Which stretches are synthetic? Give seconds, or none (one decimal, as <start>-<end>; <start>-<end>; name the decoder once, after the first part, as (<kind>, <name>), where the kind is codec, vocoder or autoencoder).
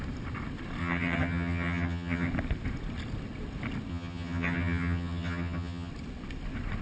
0.8-2.3 (vocoder, HiFi-GAN); 3.9-5.9